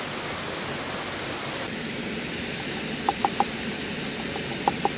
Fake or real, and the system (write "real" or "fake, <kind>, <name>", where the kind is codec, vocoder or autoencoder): real